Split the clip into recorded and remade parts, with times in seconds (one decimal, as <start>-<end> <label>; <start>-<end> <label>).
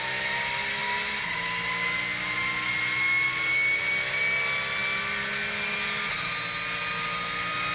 0.0-7.7 recorded